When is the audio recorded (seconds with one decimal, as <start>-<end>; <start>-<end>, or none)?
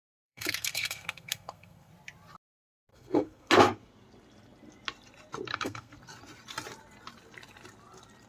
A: 1.9-2.9; 3.5-5.5; 6.0-8.3